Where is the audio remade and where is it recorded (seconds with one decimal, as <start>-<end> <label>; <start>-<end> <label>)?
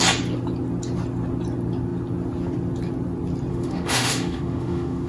0.0-3.5 recorded; 3.5-5.1 remade